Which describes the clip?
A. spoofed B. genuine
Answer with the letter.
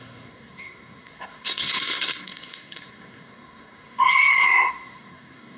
A